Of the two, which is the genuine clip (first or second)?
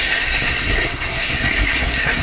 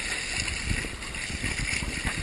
second